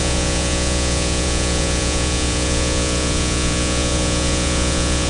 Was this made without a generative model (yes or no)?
no